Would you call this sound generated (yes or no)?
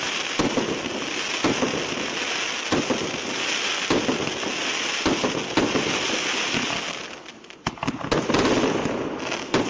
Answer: no